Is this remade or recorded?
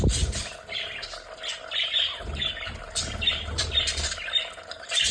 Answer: recorded